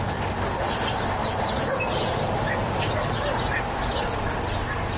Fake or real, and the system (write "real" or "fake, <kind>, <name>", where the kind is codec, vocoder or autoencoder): real